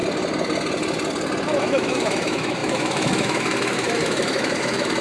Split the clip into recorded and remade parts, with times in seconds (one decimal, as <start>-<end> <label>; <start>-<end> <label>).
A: 0.0-1.6 recorded; 1.6-5.0 remade